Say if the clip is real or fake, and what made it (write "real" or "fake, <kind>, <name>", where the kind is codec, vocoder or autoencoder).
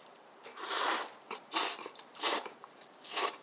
fake, vocoder, BigVGAN v2